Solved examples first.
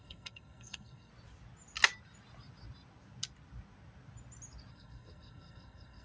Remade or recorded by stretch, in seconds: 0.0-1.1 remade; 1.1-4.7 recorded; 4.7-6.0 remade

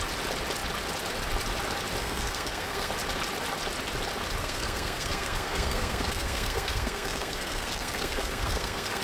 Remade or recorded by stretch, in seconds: 0.0-2.0 recorded; 2.0-2.9 remade; 2.9-4.4 recorded; 4.4-9.0 remade